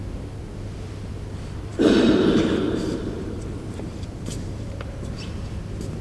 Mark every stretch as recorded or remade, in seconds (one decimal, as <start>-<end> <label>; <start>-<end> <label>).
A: 0.0-1.7 recorded; 1.7-5.0 remade; 5.0-6.0 recorded